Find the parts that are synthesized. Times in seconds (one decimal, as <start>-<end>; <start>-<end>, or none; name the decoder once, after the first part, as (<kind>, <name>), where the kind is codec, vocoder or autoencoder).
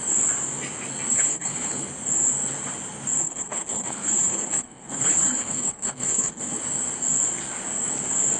1.1-1.9 (codec, HILCodec); 3.2-6.6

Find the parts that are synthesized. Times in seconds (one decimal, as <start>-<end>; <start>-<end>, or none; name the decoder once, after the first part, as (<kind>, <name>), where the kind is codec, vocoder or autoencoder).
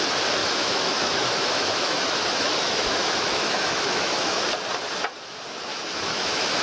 0.4-4.4 (autoencoder, DAC-VAE); 5.7-6.6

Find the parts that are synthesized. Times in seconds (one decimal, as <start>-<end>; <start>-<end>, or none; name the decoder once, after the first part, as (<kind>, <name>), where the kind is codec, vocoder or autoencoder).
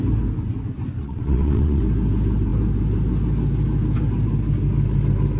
1.0-1.8 (vocoder, WaveNeXt)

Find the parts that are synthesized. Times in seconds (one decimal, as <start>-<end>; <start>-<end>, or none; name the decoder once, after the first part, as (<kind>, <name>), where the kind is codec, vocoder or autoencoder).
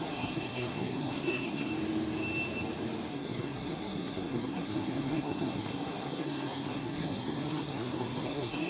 0.0-1.7 (codec, SNAC); 3.1-8.7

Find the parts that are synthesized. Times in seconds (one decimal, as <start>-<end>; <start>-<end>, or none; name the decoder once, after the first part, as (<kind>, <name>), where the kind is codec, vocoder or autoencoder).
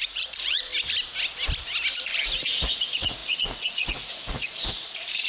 0.0-0.7 (vocoder, Vocos); 2.2-5.3